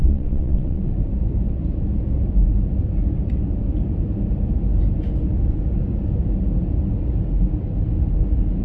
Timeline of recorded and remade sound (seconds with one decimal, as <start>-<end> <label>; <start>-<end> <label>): 0.0-0.8 remade; 0.8-8.6 recorded